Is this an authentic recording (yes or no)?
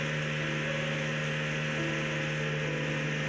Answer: yes